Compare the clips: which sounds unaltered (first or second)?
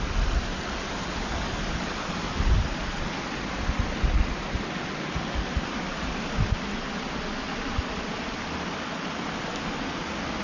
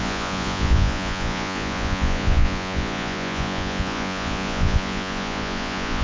first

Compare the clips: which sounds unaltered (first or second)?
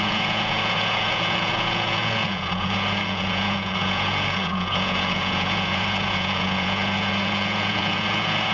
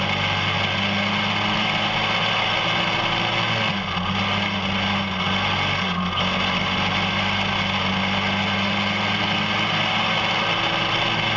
second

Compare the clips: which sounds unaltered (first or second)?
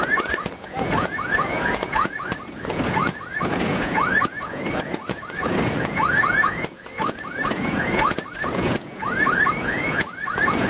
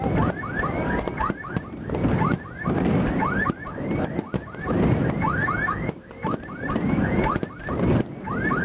second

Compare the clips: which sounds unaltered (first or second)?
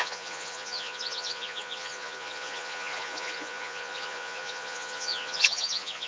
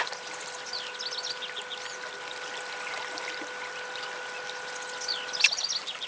second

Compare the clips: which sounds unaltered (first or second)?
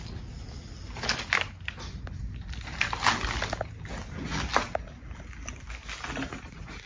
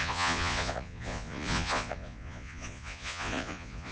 first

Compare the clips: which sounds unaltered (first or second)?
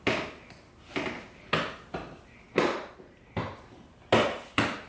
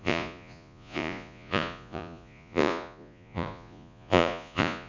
first